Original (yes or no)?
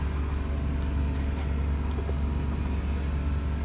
yes